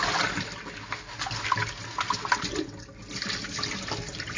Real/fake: real